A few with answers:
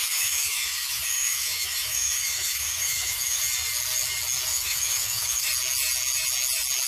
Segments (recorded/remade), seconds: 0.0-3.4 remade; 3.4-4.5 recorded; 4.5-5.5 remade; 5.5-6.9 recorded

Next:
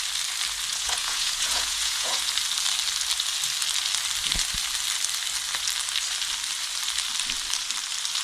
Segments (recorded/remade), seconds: 0.0-0.7 recorded; 0.7-2.2 remade; 2.2-8.2 recorded